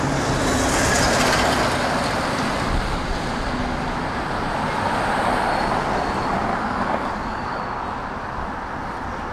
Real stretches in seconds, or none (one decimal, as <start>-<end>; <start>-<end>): 0.0-6.5; 7.6-9.3